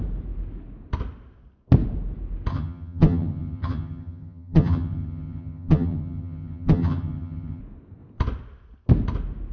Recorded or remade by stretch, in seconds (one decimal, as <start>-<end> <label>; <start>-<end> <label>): 0.0-2.5 recorded; 2.5-7.6 remade; 7.6-9.5 recorded